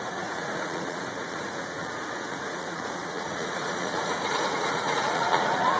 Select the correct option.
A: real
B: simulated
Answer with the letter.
B